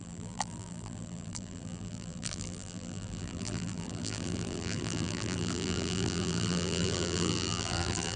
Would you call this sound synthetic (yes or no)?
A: yes